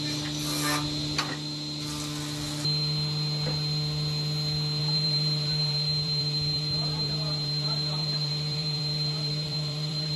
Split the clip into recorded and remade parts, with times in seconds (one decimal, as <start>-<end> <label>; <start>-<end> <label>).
0.0-4.8 recorded; 4.8-10.2 remade